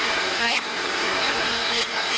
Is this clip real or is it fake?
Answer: fake